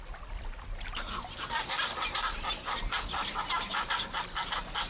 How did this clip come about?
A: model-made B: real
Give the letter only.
B